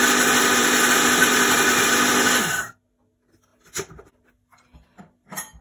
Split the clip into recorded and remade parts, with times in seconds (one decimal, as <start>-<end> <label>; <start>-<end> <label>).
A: 0.0-5.6 recorded